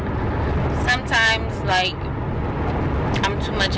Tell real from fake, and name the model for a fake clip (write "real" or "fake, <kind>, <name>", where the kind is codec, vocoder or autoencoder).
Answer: real